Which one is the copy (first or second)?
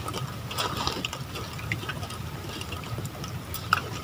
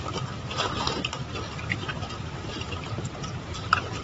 second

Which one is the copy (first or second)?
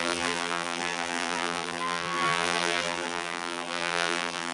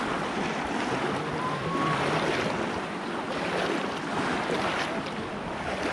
first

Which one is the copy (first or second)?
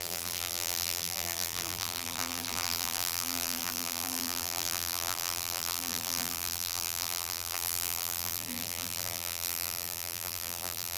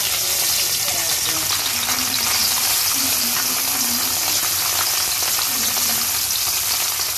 first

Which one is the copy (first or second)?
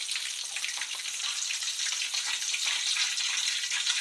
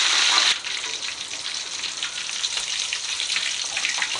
second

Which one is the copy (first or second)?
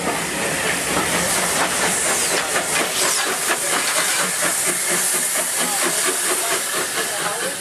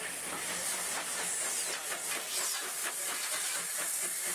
first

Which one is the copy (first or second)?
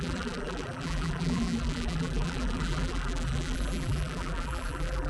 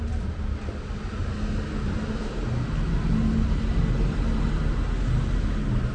first